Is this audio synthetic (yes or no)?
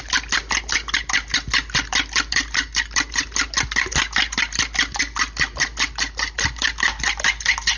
no